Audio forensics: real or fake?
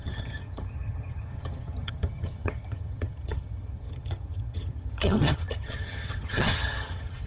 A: fake